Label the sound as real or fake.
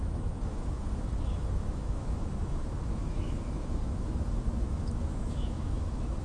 fake